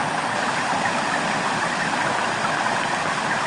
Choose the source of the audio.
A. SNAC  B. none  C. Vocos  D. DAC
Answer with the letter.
B